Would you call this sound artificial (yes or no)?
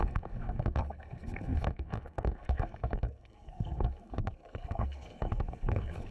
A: yes